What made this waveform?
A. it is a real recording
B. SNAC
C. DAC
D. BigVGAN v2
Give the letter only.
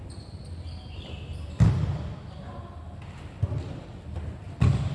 A